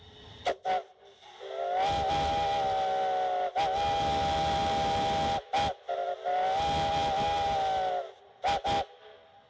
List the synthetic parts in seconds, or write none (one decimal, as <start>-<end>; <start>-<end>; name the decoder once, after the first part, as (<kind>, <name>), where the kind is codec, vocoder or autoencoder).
none